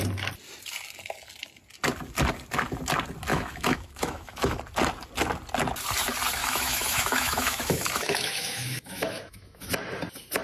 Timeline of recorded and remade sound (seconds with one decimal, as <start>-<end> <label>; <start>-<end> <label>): 0.0-3.3 recorded; 3.3-4.6 remade; 4.6-6.4 recorded; 6.4-9.7 remade; 9.7-10.4 recorded